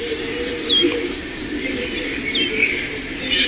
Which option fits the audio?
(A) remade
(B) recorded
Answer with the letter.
B